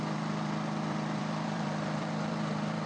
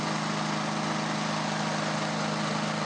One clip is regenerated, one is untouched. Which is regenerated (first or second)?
first